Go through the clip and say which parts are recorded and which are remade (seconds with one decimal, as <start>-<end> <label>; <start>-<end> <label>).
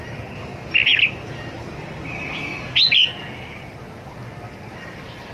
0.0-5.3 recorded